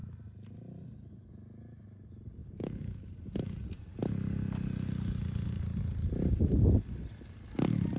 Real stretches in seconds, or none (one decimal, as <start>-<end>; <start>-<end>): 0.0-2.4; 3.0-8.0